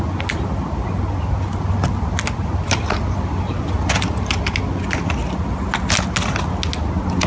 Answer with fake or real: real